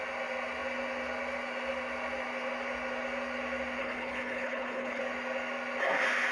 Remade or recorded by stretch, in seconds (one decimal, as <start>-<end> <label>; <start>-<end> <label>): 0.0-3.8 recorded; 3.8-5.0 remade; 5.0-6.3 recorded

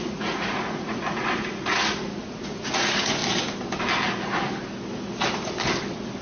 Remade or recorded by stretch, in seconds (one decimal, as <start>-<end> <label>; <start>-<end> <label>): 0.0-3.2 remade; 3.2-6.2 recorded

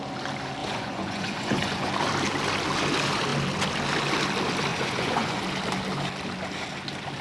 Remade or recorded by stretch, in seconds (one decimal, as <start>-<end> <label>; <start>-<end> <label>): 0.0-0.6 recorded; 0.6-1.9 remade; 1.9-4.7 recorded; 4.7-5.4 remade; 5.4-7.2 recorded

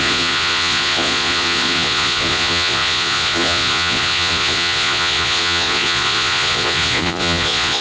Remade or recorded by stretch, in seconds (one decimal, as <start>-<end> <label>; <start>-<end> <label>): 0.0-7.8 remade

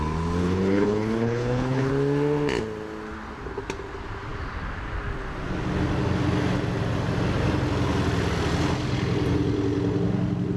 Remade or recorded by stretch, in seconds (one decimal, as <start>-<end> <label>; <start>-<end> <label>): 0.0-0.4 recorded; 0.4-1.9 remade; 1.9-10.6 recorded

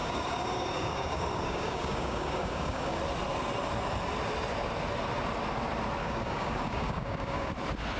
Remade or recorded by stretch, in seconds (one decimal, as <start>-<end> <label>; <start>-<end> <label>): 0.0-3.0 remade; 3.0-6.0 recorded; 6.0-7.5 remade; 7.5-8.0 recorded

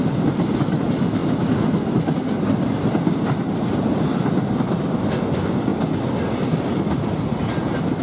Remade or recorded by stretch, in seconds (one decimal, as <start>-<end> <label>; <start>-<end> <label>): 0.0-8.0 recorded

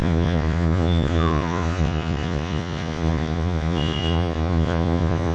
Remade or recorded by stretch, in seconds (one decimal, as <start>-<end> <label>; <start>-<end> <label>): 0.0-5.3 remade